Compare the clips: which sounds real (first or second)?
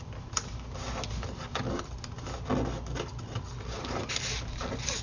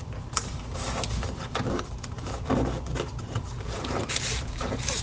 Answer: first